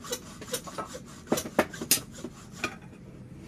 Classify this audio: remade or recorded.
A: recorded